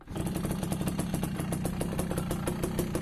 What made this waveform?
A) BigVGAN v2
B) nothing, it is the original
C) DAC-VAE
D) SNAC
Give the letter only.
B